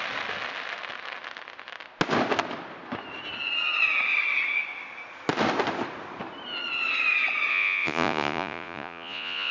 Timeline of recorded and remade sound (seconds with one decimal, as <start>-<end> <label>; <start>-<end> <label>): 0.0-7.5 recorded; 7.5-9.5 remade